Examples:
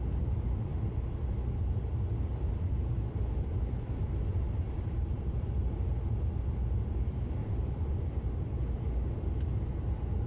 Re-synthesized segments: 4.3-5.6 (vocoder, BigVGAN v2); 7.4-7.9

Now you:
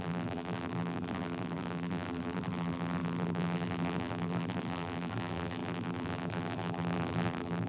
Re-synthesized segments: 0.0-7.7 (vocoder, BigVGAN v2)

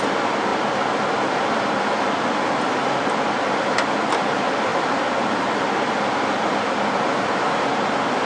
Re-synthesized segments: 4.7-5.7 (vocoder, BigVGAN v2)

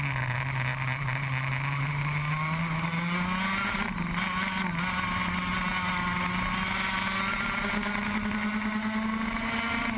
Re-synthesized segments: none

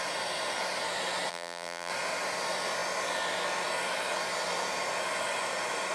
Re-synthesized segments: 1.3-1.9 (vocoder, BigVGAN v2)

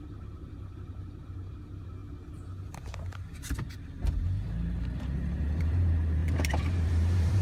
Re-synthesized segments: 0.0-2.0 (vocoder, BigVGAN v2); 5.0-7.4